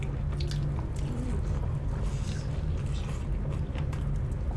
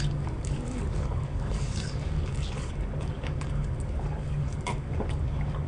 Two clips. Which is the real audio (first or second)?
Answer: first